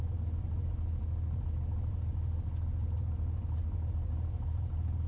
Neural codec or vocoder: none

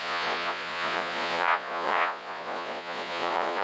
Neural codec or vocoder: vocoder, Vocos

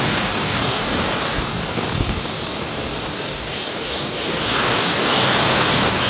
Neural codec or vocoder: codec, DAC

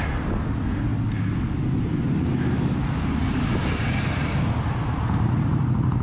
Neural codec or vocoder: none